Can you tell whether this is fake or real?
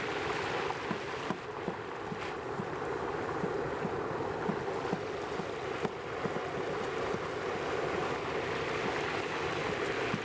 real